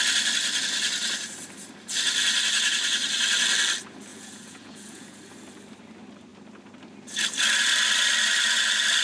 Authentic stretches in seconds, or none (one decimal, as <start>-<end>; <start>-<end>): 0.0-4.1; 5.2-9.0